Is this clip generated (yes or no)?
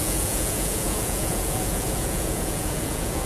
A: yes